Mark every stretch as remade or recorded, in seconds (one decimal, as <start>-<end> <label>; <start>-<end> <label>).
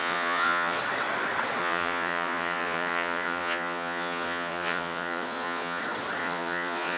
0.0-0.8 remade; 0.8-1.6 recorded; 1.6-5.8 remade; 5.8-6.2 recorded; 6.2-7.0 remade